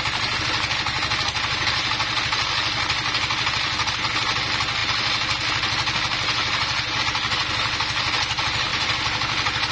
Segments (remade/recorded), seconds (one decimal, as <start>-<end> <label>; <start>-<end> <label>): 0.0-8.7 recorded; 8.7-9.7 remade